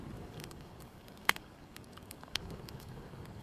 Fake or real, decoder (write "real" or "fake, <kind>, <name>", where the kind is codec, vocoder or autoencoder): fake, codec, DAC